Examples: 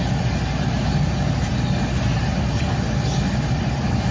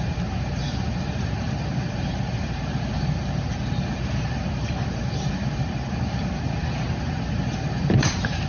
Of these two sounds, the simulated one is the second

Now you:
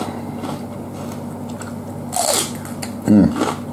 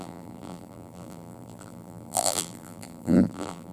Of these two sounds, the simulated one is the second